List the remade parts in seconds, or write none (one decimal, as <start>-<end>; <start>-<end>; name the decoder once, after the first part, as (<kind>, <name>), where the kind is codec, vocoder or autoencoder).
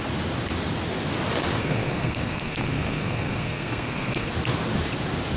1.6-4.3 (codec, SNAC)